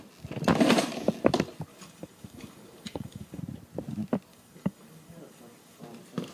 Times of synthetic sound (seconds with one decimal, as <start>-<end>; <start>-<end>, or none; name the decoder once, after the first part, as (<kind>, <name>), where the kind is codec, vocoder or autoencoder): 1.7-3.4 (codec, DAC); 4.3-5.8